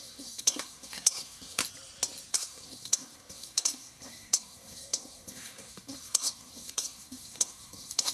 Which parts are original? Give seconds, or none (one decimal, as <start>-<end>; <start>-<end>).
1.6-2.3